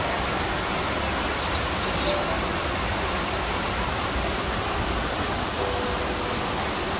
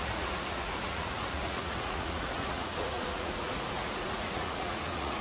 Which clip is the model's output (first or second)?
second